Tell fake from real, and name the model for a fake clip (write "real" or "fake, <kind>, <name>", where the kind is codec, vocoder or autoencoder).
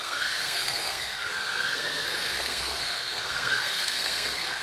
fake, codec, SNAC